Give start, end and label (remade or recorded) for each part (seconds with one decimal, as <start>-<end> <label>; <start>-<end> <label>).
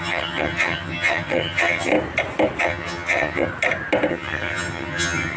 0.0-1.9 remade; 1.9-2.6 recorded; 2.6-3.5 remade; 3.5-4.1 recorded; 4.1-5.4 remade